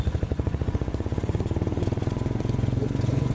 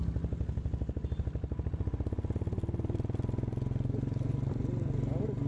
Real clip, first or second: second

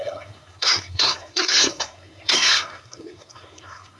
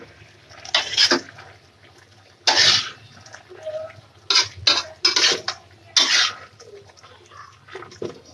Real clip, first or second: second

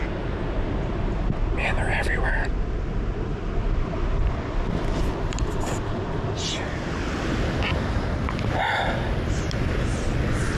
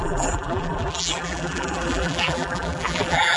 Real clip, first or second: first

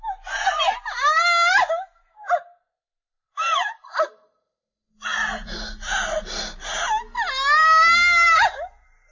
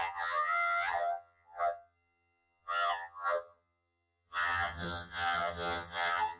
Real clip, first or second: first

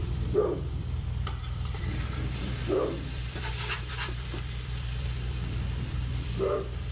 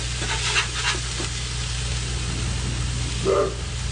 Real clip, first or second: second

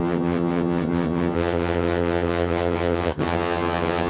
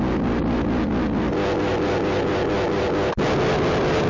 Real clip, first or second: second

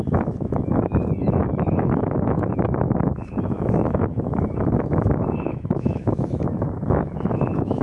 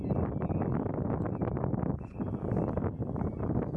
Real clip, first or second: second